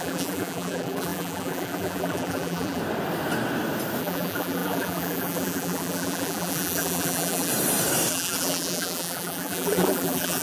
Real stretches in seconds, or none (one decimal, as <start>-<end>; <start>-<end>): 2.8-4.0; 7.5-8.1